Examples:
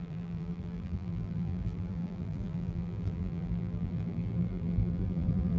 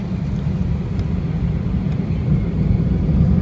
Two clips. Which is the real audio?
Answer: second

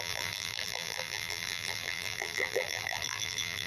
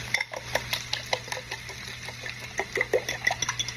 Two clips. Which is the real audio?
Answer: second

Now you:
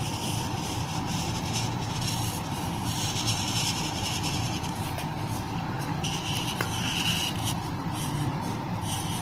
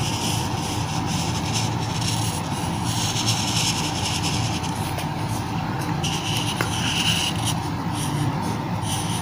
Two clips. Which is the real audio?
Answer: second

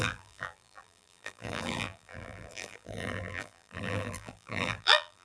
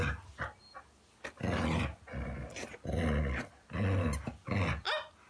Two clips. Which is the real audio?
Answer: second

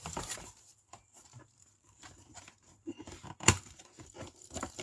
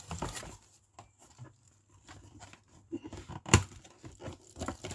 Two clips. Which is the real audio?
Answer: second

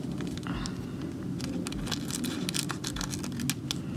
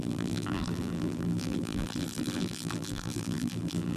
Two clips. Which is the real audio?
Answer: first